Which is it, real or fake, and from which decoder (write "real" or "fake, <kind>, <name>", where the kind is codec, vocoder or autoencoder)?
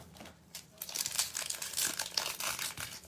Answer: real